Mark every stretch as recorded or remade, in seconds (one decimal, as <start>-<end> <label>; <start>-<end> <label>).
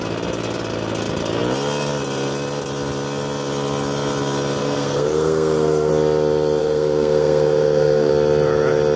0.0-4.6 recorded; 4.6-5.9 remade; 5.9-6.6 recorded; 6.6-8.1 remade; 8.1-9.0 recorded